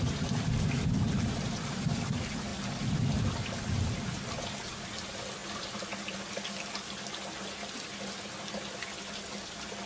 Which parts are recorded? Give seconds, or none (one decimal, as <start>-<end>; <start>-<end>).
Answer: 0.0-9.9